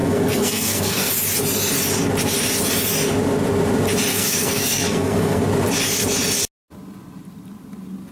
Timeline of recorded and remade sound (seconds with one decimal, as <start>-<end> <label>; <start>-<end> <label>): 0.0-1.1 remade; 1.1-4.1 recorded; 4.1-5.4 remade; 5.4-8.1 recorded